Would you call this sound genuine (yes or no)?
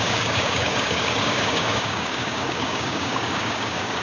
no